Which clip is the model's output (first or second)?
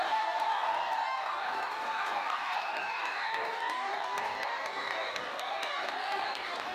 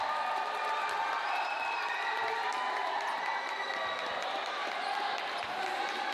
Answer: first